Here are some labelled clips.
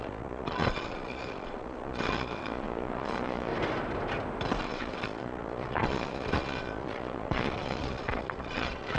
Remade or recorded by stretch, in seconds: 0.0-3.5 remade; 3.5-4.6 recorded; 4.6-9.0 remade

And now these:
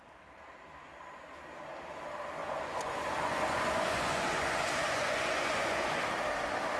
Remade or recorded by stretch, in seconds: 0.0-2.4 recorded; 2.4-6.0 remade; 6.0-6.8 recorded

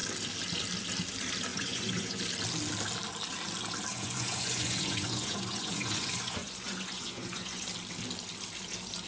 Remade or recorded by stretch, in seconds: 0.0-1.5 recorded; 1.5-2.2 remade; 2.2-3.9 recorded; 3.9-7.6 remade; 7.6-9.1 recorded

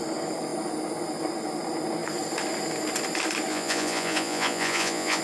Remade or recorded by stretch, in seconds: 0.0-3.5 recorded; 3.5-5.2 remade

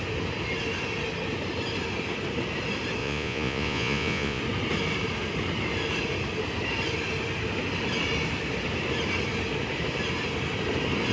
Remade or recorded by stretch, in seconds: 0.0-3.0 recorded; 3.0-4.4 remade; 4.4-11.1 recorded

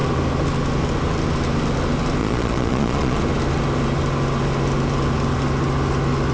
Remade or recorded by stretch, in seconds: 0.0-2.2 recorded; 2.2-3.2 remade; 3.2-6.3 recorded

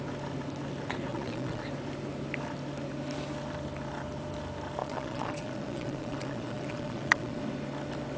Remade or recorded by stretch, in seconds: 0.0-1.1 recorded; 1.1-1.6 remade; 1.6-4.8 recorded; 4.8-7.4 remade; 7.4-8.2 recorded

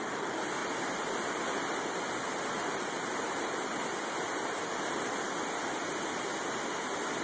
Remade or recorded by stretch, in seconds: 0.0-7.2 recorded